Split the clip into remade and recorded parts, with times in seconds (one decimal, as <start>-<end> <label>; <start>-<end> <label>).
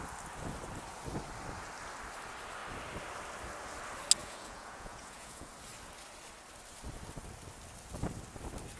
0.0-4.2 recorded; 4.2-5.5 remade; 5.5-8.8 recorded